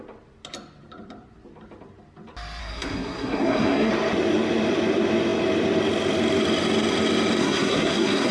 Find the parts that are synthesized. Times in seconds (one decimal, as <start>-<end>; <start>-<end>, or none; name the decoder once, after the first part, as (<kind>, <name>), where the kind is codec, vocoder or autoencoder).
2.6-3.9 (codec, SNAC); 7.4-8.3